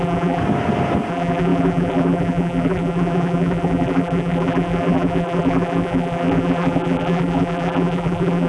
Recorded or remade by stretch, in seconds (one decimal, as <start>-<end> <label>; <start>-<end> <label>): 0.0-0.4 remade; 0.4-1.1 recorded; 1.1-8.5 remade